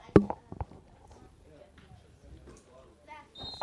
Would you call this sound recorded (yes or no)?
yes